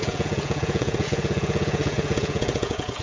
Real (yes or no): no